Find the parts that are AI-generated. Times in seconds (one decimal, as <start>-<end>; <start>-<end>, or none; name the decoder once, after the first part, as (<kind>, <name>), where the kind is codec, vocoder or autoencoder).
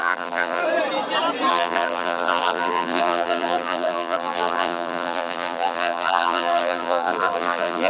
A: 0.0-0.6 (vocoder, BigVGAN v2); 1.5-7.9